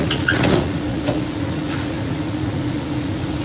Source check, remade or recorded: remade